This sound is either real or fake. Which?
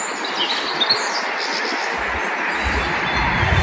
real